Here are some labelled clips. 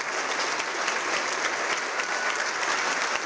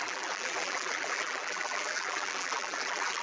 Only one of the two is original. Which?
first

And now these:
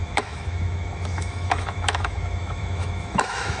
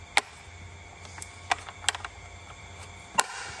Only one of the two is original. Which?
second